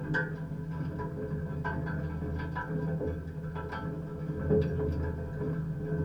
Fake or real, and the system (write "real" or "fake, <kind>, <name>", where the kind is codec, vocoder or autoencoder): real